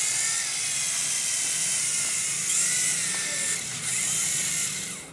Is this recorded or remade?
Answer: recorded